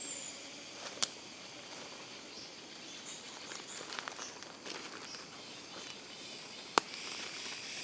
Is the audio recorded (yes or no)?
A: yes